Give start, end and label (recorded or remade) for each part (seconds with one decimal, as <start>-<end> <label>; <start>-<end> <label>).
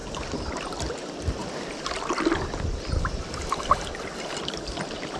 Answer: 0.0-5.2 recorded